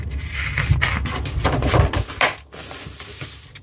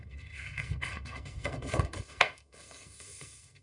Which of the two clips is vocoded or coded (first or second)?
second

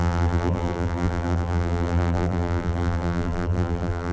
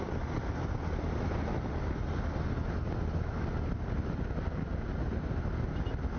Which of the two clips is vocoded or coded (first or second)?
first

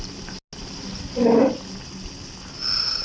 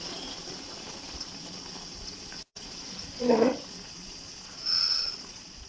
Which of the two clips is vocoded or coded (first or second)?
second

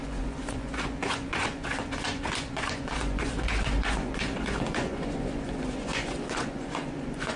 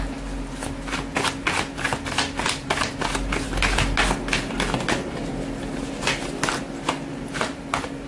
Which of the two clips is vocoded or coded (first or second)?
first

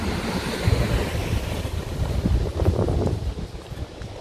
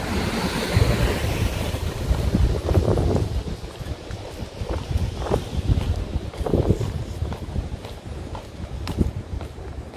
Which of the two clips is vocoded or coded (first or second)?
first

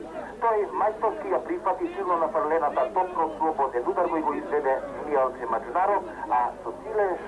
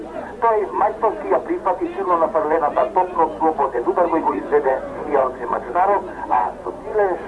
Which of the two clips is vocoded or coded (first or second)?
second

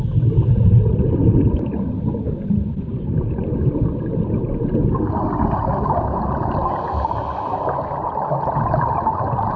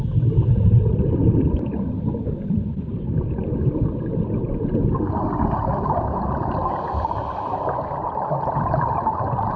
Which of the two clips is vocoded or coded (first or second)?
second